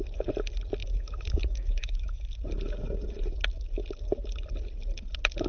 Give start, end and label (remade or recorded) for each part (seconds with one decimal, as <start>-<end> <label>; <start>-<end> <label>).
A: 0.0-0.8 recorded; 0.8-2.3 remade; 2.3-5.5 recorded